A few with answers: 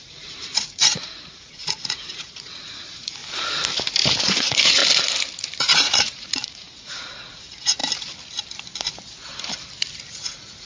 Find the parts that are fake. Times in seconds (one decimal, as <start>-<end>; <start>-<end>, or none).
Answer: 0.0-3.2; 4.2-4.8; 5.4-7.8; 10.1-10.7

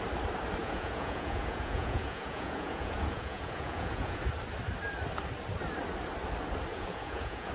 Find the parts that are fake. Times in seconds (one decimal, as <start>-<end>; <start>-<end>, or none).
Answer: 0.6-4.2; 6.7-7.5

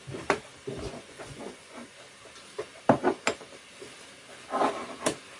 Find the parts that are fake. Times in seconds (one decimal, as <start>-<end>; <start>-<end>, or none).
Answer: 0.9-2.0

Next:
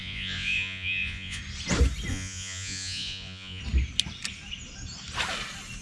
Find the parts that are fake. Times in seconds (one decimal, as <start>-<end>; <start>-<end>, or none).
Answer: 0.0-1.4; 2.1-3.6